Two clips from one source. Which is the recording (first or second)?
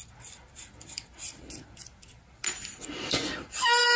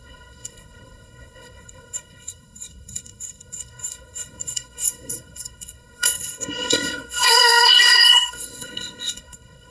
first